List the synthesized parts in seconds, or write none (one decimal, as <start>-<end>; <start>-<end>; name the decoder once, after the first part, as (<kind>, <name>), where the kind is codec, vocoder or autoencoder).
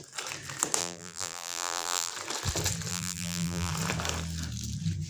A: 0.8-2.1 (vocoder, BigVGAN v2); 2.9-3.7